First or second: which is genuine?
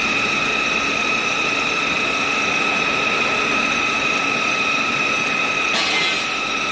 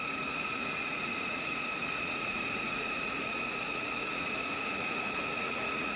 first